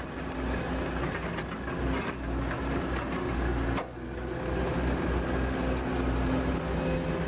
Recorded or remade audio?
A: recorded